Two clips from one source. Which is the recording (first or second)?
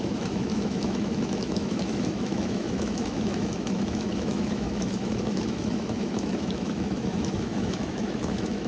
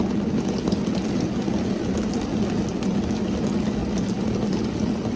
second